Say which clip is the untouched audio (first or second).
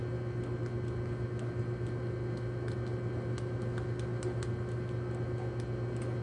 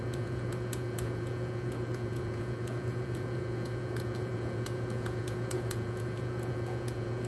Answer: first